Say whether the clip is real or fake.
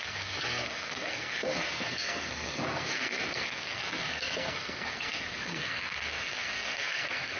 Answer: fake